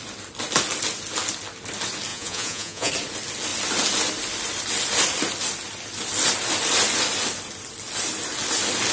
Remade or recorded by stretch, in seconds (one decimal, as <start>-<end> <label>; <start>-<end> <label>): 0.0-2.1 recorded; 2.1-2.9 remade; 2.9-8.9 recorded